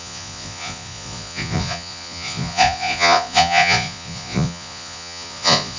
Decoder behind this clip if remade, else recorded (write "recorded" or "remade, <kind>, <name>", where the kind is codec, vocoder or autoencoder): remade, vocoder, Vocos